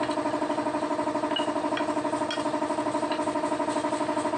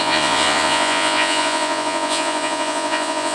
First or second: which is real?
first